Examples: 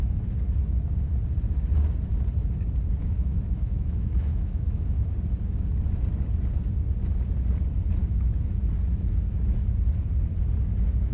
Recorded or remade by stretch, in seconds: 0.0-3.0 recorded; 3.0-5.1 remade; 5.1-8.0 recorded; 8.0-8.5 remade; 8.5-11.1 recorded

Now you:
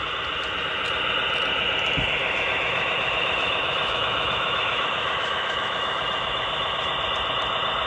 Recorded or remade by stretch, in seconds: 0.0-2.2 recorded; 2.2-6.9 remade; 6.9-7.9 recorded

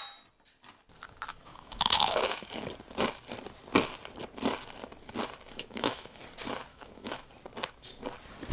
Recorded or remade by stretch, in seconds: 0.0-1.3 recorded; 1.3-2.5 remade; 2.5-5.5 recorded; 5.5-6.2 remade; 6.2-6.7 recorded; 6.7-7.3 remade; 7.3-8.5 recorded

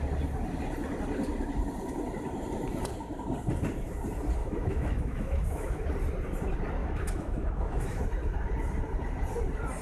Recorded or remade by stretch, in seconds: 0.0-4.4 recorded; 4.4-5.9 remade; 5.9-6.8 recorded; 6.8-8.0 remade; 8.0-9.8 recorded

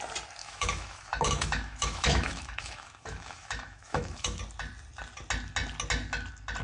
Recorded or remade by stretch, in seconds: 0.0-0.4 recorded; 0.4-4.4 remade; 4.4-6.6 recorded

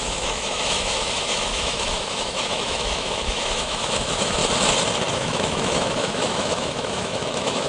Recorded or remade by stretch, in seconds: 0.0-4.4 remade; 4.4-5.1 recorded; 5.1-7.7 remade

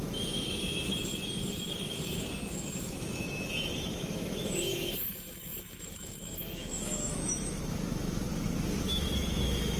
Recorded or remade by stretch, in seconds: 0.0-8.3 remade; 8.3-8.8 recorded; 8.8-9.8 remade